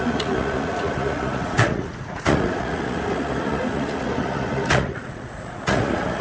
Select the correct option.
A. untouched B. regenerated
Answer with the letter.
B